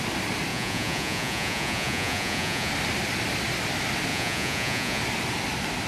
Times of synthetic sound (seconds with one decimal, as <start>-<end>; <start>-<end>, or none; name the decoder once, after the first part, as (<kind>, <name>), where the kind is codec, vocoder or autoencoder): 0.5-2.7 (vocoder, Vocos); 4.1-5.0